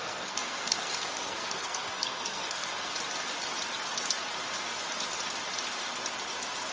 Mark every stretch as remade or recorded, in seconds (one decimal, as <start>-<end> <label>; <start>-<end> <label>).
0.0-2.9 remade; 2.9-6.7 recorded